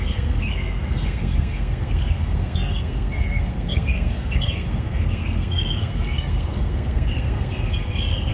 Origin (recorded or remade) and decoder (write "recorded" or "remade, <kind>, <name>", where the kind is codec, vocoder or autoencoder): remade, codec, SNAC